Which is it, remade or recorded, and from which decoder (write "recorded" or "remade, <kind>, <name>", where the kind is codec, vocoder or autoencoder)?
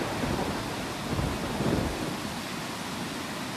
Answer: recorded